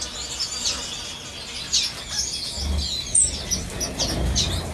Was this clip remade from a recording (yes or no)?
no